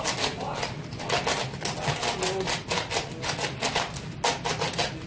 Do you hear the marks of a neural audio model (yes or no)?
no